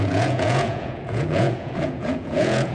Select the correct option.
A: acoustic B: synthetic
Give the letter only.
B